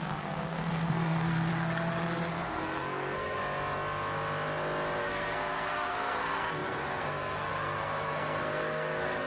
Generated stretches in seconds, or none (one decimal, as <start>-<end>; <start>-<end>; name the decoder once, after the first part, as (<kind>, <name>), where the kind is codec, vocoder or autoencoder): 0.0-1.5 (codec, SNAC); 2.3-3.4; 5.0-9.3